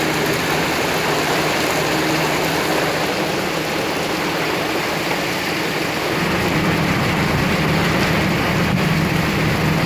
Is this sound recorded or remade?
recorded